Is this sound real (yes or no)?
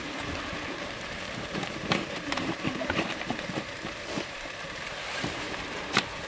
no